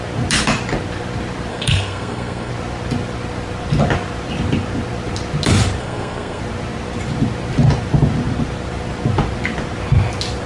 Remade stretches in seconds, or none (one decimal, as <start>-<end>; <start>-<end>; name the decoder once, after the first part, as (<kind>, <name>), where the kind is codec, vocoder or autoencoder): 1.5-2.5 (codec, SNAC); 5.8-6.4